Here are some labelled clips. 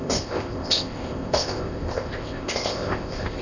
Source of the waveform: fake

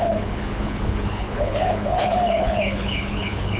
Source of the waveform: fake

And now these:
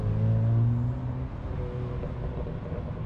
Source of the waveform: real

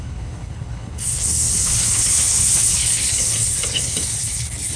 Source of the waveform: fake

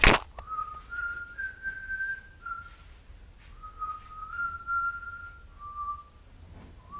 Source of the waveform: real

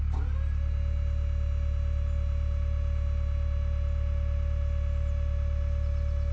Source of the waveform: real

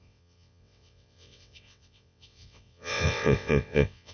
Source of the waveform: fake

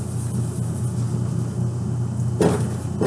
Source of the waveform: real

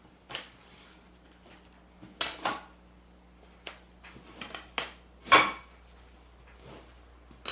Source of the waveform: real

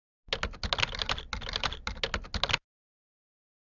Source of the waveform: real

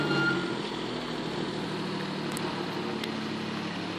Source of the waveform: real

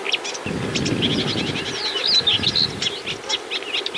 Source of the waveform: real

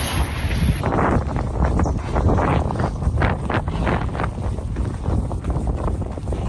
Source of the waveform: real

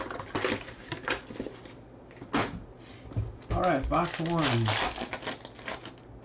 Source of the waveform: real